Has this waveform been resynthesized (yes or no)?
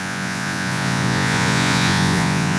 yes